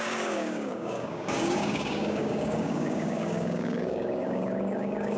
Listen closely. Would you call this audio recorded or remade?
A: remade